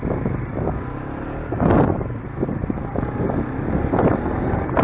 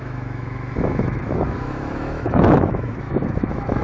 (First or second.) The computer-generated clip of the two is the second